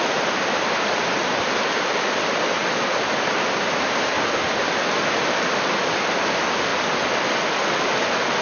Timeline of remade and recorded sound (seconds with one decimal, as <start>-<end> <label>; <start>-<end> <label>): 0.0-8.4 recorded